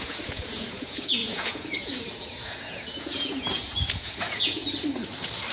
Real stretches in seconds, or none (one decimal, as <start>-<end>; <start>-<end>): 4.6-5.5